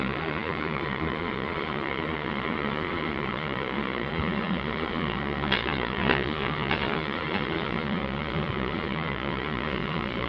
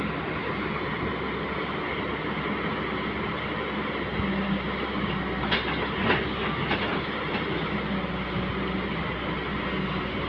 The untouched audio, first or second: second